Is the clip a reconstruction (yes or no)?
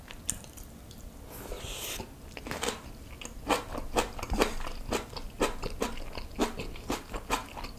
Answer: no